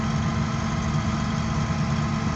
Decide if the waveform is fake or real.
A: real